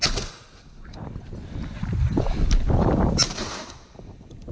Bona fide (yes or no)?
yes